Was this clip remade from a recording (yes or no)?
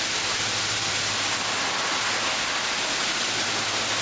no